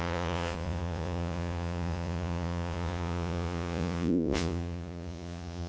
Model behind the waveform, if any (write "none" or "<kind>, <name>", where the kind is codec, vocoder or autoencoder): vocoder, Vocos